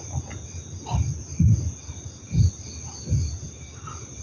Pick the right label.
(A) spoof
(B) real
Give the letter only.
B